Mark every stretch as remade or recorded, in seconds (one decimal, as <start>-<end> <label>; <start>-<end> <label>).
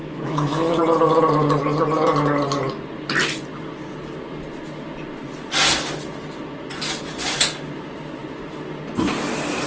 0.0-0.8 remade; 0.8-9.7 recorded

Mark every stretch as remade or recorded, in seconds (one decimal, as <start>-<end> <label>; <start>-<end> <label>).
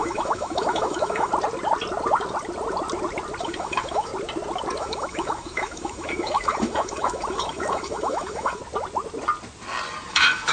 0.0-1.3 remade; 1.3-3.4 recorded; 3.4-4.1 remade; 4.1-4.8 recorded; 4.8-8.6 remade; 8.6-10.1 recorded; 10.1-10.5 remade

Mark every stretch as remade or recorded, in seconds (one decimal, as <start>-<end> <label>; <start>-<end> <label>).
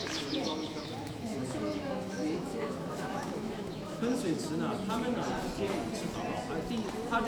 0.0-4.4 remade; 4.4-7.3 recorded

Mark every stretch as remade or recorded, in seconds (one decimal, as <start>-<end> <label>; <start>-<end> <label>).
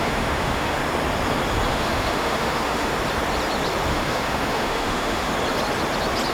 0.0-0.8 remade; 0.8-1.7 recorded; 1.7-2.9 remade; 2.9-3.9 recorded; 3.9-5.3 remade; 5.3-6.3 recorded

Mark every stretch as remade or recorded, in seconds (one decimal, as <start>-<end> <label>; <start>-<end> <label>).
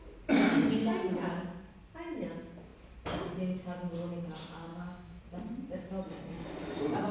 0.0-4.7 recorded; 4.7-5.2 remade; 5.2-7.1 recorded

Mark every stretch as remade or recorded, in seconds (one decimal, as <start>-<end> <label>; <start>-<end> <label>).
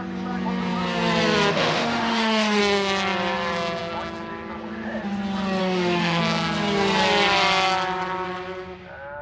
0.0-1.5 recorded; 1.5-2.6 remade; 2.6-5.6 recorded; 5.6-6.2 remade; 6.2-9.2 recorded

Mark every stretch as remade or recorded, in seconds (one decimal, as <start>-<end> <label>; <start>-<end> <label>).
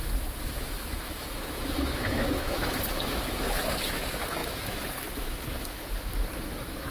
0.0-6.9 remade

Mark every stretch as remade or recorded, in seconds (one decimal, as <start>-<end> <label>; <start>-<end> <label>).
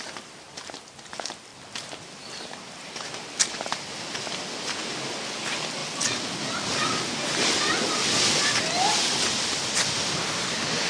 0.0-10.9 recorded